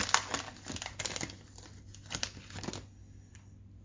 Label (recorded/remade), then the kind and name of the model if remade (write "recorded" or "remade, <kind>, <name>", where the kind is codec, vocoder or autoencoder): recorded